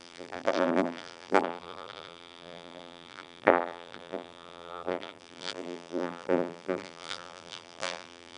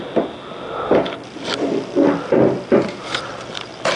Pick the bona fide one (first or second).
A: second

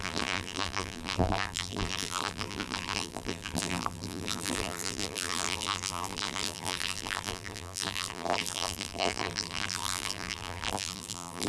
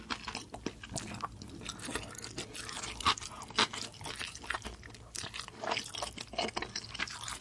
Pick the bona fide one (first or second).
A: second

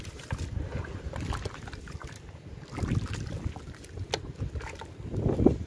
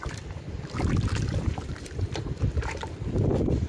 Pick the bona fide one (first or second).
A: first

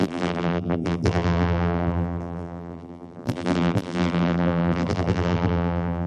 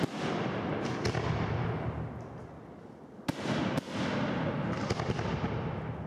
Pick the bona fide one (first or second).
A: second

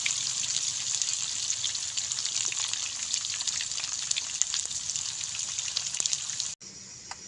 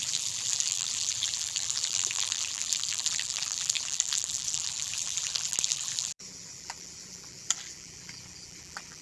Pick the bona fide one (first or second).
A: first